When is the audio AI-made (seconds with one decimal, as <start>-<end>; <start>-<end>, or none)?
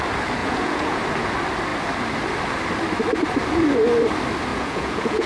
0.4-1.0; 4.5-5.3